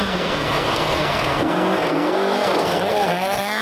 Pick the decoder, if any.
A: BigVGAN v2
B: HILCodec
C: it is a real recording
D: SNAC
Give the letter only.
D